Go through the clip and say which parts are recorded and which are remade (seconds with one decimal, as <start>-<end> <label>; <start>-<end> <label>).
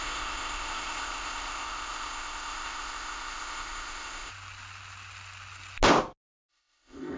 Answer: 0.0-4.3 remade; 4.3-6.5 recorded; 6.5-7.2 remade